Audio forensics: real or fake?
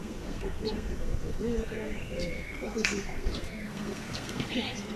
fake